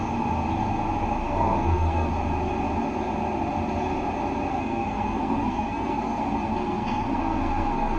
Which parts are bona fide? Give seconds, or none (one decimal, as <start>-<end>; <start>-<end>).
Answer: 0.0-1.2; 2.1-4.5